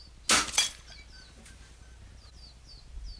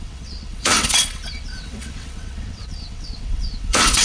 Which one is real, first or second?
first